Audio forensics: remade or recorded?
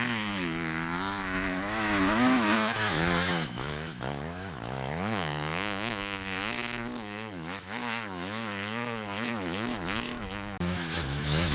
remade